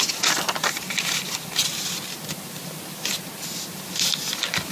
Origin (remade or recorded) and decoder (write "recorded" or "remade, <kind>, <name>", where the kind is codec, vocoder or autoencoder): recorded